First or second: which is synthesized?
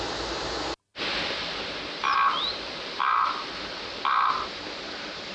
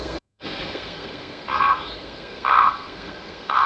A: second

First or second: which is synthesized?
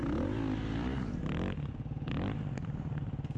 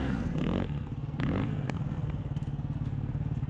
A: second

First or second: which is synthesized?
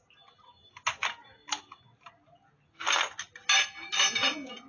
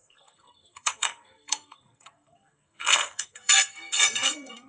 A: second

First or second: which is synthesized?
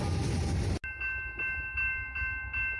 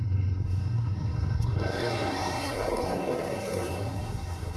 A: second